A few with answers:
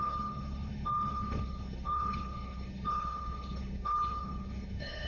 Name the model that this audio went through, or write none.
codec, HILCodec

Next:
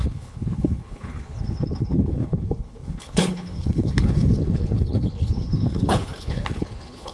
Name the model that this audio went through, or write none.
codec, HILCodec